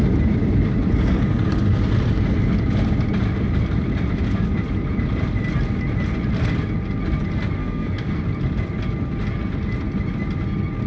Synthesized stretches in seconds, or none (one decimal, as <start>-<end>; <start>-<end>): 7.6-8.2